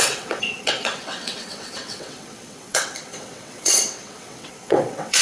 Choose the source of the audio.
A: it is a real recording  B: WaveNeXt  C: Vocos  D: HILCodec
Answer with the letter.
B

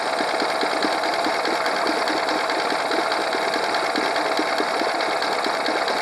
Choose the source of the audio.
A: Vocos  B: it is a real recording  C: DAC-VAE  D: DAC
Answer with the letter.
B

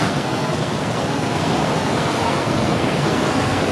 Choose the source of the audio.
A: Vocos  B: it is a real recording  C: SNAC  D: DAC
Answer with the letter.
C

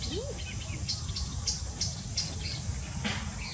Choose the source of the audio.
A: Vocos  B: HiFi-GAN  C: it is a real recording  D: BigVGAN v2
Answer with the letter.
C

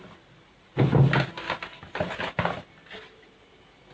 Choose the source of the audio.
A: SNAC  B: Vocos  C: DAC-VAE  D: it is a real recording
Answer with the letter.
D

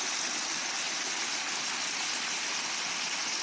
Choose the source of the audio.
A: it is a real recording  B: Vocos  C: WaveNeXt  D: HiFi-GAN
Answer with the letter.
A